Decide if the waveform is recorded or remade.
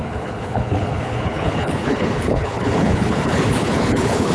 remade